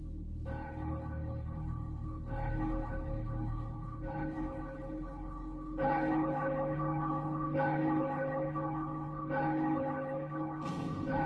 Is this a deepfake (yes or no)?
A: yes